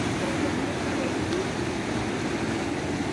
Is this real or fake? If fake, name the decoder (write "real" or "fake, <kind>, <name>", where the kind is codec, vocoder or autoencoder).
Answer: real